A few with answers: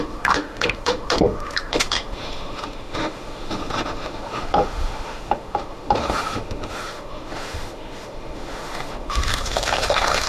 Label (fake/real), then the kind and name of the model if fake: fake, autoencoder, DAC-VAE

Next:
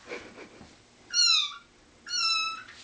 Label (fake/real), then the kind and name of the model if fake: real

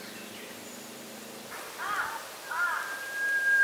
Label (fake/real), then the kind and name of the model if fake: real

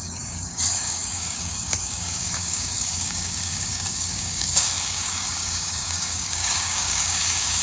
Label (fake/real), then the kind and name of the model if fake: fake, codec, DAC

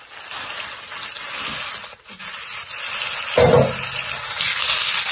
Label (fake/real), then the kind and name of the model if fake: real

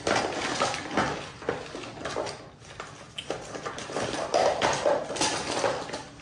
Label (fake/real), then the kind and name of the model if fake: real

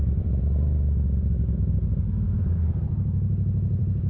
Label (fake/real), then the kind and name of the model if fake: fake, vocoder, BigVGAN v2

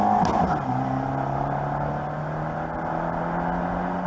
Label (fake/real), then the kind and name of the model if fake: real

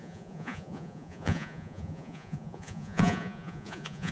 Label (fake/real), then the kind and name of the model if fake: fake, vocoder, Vocos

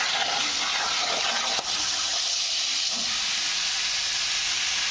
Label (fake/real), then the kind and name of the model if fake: real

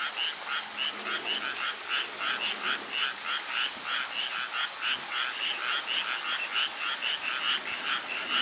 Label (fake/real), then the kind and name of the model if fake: real